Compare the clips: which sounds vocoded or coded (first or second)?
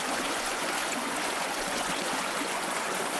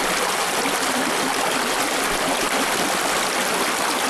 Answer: first